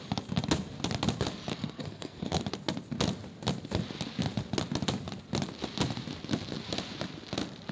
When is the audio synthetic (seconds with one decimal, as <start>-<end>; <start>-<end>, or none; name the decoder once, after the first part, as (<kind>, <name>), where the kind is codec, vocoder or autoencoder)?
1.5-2.4 (codec, SNAC)